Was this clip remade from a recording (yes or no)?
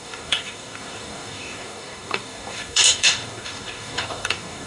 yes